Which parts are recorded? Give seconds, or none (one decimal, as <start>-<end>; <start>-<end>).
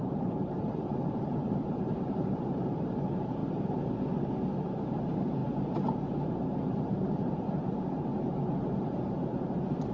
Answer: 5.4-6.3; 8.1-9.3